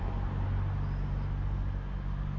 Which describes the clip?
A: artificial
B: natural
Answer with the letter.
B